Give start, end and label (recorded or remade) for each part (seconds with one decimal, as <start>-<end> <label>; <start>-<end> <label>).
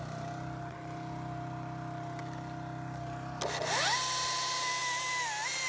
0.0-5.7 recorded